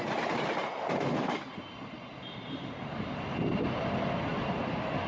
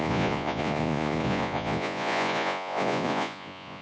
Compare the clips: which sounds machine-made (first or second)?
second